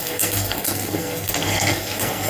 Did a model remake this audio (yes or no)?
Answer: yes